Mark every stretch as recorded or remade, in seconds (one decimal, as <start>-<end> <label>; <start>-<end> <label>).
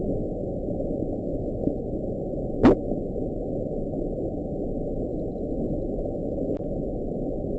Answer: 0.0-7.6 recorded